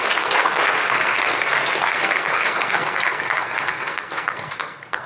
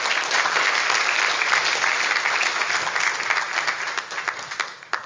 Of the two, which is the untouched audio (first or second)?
second